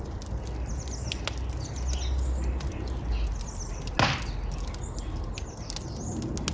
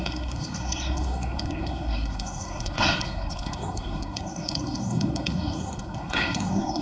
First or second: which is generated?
second